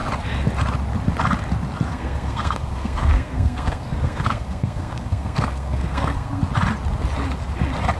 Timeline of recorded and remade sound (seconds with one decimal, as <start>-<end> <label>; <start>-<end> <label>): 0.0-1.9 recorded; 1.9-6.4 remade; 6.4-8.0 recorded